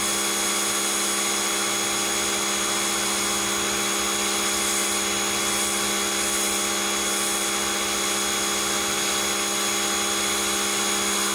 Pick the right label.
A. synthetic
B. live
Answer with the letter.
B